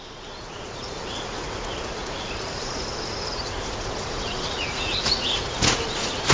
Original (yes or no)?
no